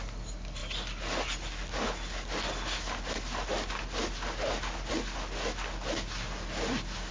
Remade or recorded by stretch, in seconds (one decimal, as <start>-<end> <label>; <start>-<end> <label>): 0.0-7.1 recorded